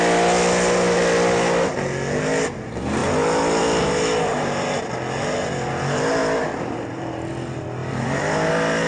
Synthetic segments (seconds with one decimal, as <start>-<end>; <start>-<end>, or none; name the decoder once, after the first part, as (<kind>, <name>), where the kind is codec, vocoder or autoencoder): 4.3-5.7 (vocoder, BigVGAN v2); 6.2-7.3; 7.8-8.5